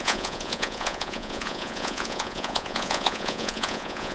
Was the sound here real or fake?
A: fake